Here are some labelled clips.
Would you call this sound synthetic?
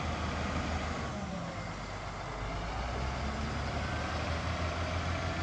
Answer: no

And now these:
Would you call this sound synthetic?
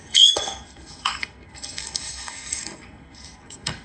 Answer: yes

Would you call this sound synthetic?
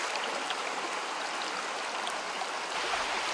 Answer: no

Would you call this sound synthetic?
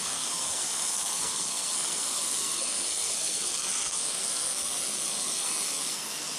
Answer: yes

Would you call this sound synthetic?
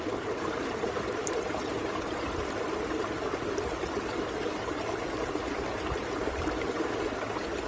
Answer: no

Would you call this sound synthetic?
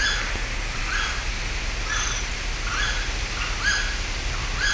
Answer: no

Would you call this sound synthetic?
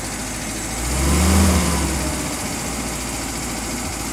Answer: no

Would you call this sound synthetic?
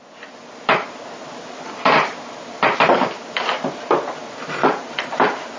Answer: yes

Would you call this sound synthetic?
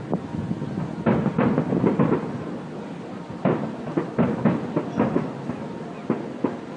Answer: no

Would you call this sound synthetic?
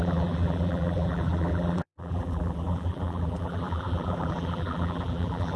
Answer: yes